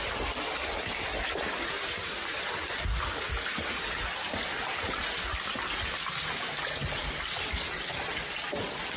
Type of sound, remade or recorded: recorded